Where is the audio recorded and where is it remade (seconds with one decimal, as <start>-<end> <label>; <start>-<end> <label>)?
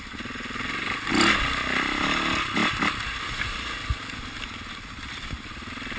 0.0-6.0 recorded